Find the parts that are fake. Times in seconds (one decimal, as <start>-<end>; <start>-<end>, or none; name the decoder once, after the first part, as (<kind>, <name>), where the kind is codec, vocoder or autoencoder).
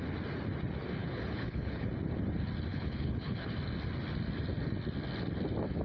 1.0-1.9 (codec, HILCodec); 2.7-3.5